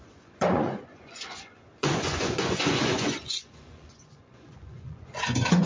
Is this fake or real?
fake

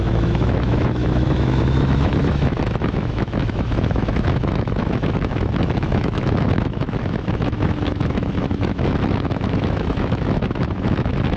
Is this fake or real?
fake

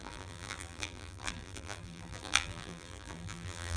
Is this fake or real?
fake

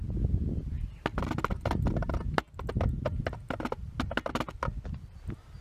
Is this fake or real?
real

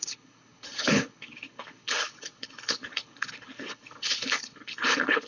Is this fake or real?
fake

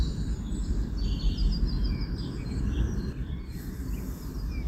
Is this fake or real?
fake